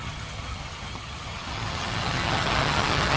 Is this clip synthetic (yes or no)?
yes